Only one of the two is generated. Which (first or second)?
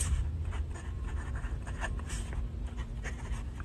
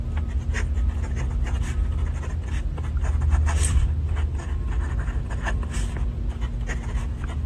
first